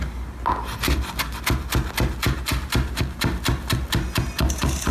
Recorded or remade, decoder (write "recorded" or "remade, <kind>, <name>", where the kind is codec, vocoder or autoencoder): recorded